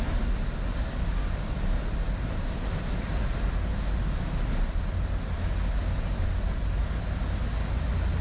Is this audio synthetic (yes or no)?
no